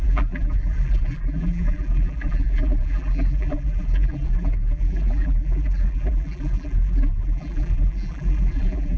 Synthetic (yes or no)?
yes